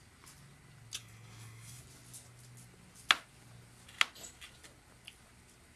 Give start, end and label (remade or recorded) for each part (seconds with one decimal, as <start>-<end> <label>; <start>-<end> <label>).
0.0-1.0 recorded; 1.0-1.8 remade; 1.8-5.8 recorded